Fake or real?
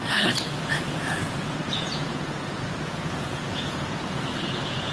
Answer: fake